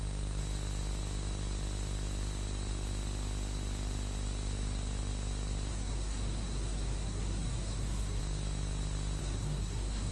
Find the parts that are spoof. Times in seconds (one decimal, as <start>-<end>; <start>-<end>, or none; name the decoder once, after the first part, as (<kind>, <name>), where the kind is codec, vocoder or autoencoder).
5.7-8.2 (codec, SNAC); 9.2-10.1